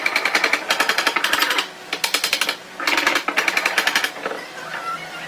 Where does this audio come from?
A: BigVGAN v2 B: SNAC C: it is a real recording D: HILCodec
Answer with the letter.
C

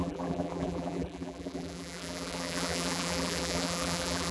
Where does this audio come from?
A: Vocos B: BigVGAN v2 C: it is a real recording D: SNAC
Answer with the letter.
B